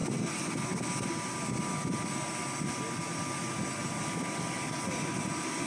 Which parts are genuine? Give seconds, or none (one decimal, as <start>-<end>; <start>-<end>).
0.0-5.7